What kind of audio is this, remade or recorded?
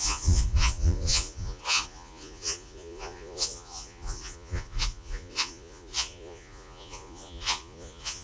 remade